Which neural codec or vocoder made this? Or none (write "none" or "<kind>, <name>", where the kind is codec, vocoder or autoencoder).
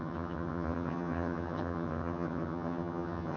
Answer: vocoder, HiFi-GAN